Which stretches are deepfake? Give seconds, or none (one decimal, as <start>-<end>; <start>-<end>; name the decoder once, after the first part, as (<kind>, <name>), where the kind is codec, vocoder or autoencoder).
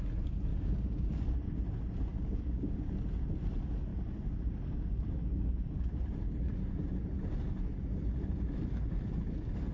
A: 0.5-1.3 (codec, DAC); 2.1-2.9